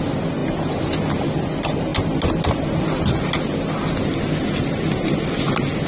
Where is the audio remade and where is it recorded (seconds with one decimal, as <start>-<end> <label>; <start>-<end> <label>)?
0.0-5.9 recorded